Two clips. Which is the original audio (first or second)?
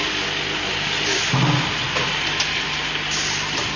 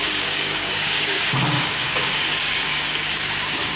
first